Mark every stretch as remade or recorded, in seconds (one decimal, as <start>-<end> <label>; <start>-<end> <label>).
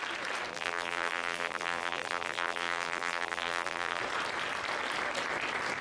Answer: 0.0-0.5 recorded; 0.5-4.0 remade; 4.0-5.8 recorded